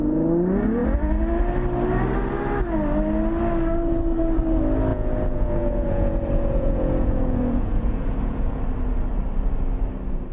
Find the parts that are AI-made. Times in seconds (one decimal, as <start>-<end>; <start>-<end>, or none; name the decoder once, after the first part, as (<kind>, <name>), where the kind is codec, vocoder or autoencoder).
4.9-8.6 (vocoder, Vocos)